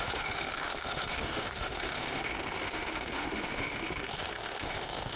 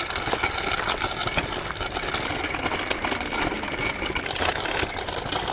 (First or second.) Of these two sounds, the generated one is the first